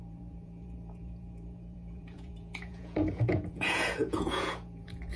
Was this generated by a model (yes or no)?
yes